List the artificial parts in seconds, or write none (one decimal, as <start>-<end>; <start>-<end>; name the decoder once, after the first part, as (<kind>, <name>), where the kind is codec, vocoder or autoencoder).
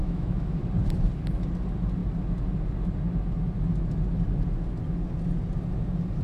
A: 0.0-0.6 (autoencoder, DAC-VAE)